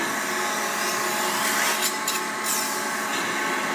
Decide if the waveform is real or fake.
real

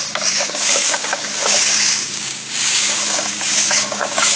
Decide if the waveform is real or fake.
fake